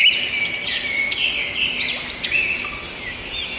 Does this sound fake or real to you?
real